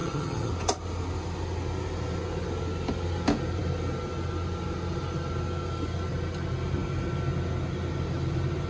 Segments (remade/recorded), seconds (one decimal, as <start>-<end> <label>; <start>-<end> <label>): 0.0-0.5 remade; 0.5-8.7 recorded